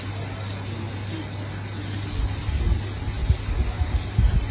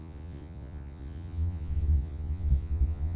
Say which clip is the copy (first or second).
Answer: second